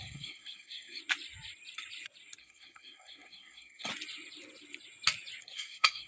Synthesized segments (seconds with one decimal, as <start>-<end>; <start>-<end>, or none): 0.0-1.0; 2.4-3.9; 5.4-6.1